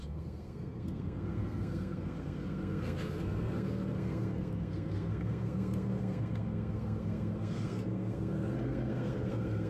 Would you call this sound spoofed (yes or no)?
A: yes